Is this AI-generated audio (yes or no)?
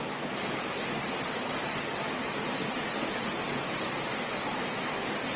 no